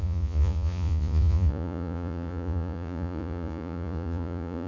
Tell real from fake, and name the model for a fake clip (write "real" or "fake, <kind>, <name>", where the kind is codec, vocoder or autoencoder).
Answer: fake, vocoder, Vocos